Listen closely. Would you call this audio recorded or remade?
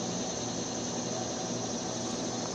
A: recorded